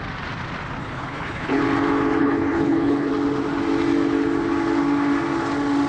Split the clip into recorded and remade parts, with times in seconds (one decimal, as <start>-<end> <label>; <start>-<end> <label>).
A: 0.0-0.8 recorded; 0.8-1.6 remade; 1.6-2.2 recorded; 2.2-3.1 remade; 3.1-5.9 recorded